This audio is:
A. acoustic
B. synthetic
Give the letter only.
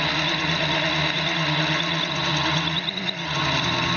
A